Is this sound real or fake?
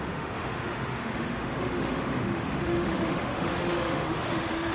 fake